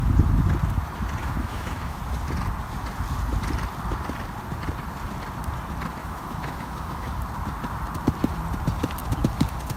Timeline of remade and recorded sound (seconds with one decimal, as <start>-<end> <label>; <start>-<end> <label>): 0.0-1.2 recorded; 1.2-2.0 remade; 2.0-6.0 recorded; 6.0-7.1 remade; 7.1-9.8 recorded